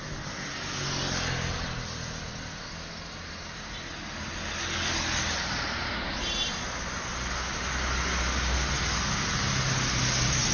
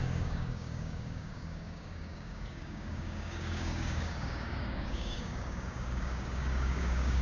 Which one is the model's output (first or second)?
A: second